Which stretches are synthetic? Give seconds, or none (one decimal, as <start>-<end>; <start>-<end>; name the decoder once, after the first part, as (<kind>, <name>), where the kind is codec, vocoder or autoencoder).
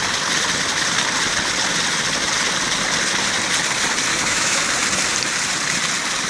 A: 4.1-4.6 (autoencoder, DAC-VAE)